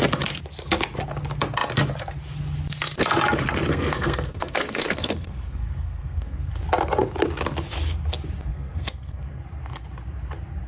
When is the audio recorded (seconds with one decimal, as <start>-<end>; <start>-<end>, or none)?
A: 0.0-3.7; 6.5-8.5; 9.4-10.7